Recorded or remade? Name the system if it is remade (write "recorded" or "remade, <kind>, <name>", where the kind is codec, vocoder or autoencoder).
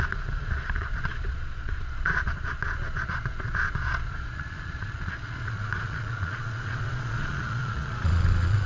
remade, vocoder, Vocos